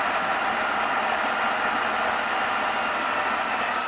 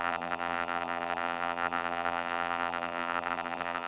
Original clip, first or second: first